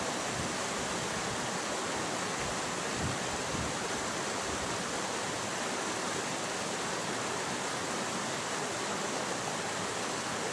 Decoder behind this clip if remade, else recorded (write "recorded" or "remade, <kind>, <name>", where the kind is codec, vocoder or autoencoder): recorded